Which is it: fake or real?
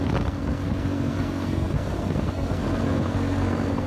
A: fake